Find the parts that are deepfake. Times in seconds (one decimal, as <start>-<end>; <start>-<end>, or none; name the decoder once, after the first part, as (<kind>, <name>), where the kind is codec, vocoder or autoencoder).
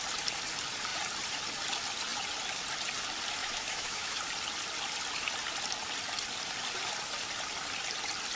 3.4-4.2 (autoencoder, DAC-VAE)